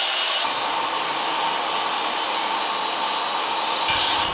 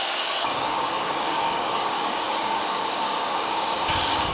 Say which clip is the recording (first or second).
first